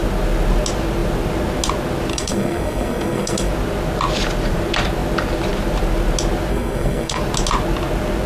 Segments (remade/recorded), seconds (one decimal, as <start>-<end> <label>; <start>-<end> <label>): 0.0-2.1 recorded; 2.1-3.5 remade; 3.5-6.5 recorded; 6.5-7.2 remade; 7.2-8.3 recorded